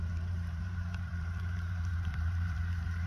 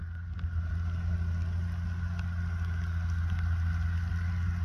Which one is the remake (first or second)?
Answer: first